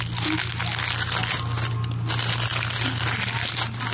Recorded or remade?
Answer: recorded